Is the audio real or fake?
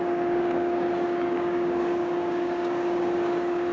fake